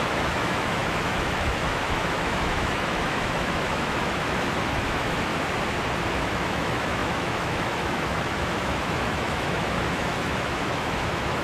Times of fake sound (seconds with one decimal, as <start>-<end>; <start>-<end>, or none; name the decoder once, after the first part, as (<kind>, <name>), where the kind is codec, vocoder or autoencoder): 0.0-5.3 (autoencoder, DAC-VAE); 6.1-11.4